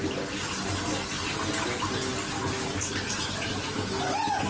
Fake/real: real